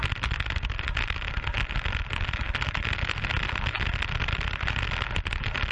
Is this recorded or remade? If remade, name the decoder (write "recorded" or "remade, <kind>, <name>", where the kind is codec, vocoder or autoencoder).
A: recorded